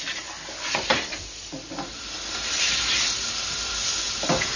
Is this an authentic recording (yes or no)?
yes